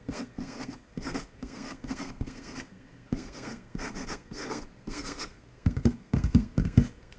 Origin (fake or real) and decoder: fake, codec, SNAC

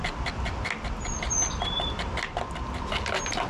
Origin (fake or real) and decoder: real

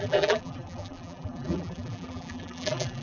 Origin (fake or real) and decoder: fake, vocoder, BigVGAN v2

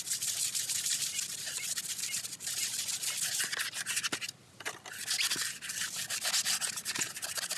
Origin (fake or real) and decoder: real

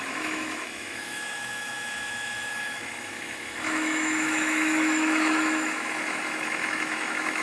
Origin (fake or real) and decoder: fake, autoencoder, DAC-VAE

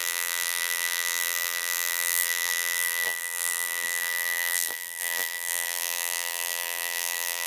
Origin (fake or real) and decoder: fake, vocoder, BigVGAN v2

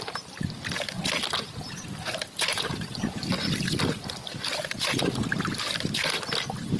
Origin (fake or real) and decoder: real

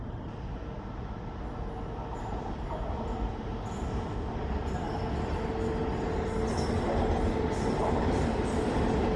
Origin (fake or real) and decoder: real